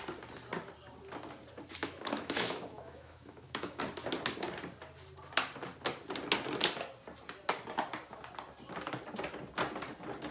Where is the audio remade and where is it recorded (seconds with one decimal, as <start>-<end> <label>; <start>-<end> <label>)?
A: 0.0-1.8 recorded; 1.8-3.8 remade; 3.8-10.3 recorded